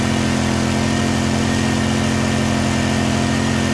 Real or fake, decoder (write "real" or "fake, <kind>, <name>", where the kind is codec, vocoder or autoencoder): real